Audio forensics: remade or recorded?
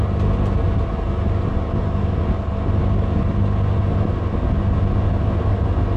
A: recorded